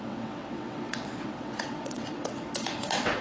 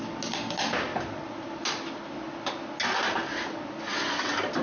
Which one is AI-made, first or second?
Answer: first